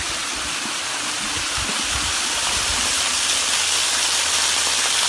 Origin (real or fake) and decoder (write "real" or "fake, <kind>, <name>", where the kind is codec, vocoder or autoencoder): real